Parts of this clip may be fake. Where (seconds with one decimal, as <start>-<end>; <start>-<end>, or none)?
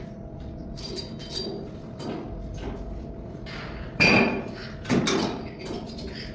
none